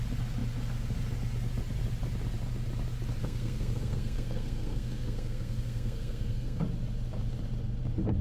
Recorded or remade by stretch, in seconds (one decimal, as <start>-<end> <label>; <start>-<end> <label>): 0.0-3.2 recorded; 3.2-6.6 remade; 6.6-8.2 recorded